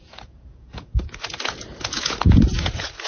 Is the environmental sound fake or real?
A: fake